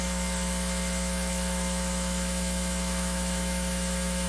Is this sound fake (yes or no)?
yes